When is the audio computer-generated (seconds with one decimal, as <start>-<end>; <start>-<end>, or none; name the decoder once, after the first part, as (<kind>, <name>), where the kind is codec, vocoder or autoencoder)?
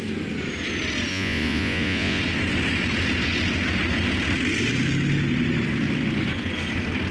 1.1-2.2 (vocoder, Vocos)